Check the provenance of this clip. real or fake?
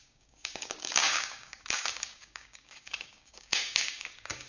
fake